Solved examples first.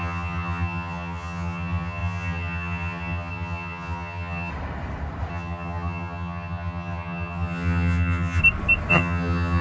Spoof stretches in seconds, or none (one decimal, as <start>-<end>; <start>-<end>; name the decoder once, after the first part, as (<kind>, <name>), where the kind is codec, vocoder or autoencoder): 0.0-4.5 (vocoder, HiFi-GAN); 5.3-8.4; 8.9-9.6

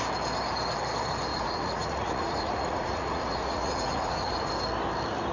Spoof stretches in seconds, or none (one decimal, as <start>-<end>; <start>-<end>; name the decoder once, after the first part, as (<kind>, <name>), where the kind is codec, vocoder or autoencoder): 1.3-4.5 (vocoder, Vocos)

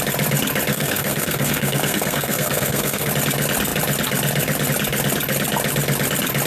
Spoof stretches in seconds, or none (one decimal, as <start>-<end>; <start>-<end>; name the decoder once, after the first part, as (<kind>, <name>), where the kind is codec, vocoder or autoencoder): 0.7-3.1 (codec, SNAC)

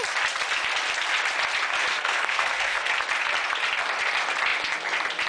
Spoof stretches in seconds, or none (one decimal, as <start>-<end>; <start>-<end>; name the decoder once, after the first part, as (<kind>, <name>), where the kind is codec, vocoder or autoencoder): 1.9-2.9 (codec, SNAC)

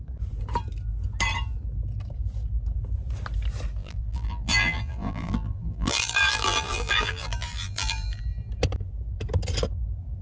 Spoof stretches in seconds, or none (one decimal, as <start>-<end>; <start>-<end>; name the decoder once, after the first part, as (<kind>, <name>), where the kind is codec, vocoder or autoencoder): 3.8-8.2 (vocoder, BigVGAN v2)

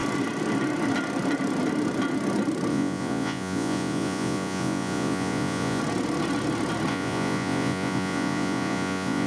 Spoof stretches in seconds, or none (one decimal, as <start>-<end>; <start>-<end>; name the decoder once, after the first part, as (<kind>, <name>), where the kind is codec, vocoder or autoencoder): 2.7-5.8 (vocoder, Vocos); 6.9-9.3

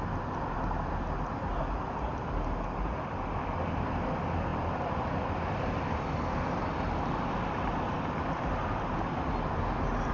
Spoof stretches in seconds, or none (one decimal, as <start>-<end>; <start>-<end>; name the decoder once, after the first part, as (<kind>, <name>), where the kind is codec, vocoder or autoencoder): none

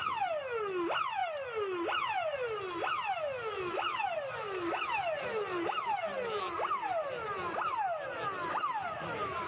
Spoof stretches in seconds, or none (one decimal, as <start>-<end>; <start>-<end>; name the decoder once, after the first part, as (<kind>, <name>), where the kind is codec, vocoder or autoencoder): none